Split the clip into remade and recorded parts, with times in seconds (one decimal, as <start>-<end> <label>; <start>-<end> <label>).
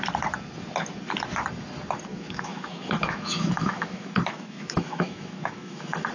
0.0-2.1 recorded; 2.1-6.1 remade